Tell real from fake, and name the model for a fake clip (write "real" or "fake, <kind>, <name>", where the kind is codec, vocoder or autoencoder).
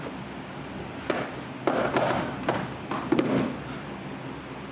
real